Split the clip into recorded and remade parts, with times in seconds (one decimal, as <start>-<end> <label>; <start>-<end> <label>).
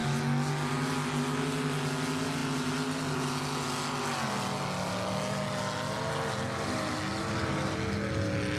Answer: 0.0-8.6 recorded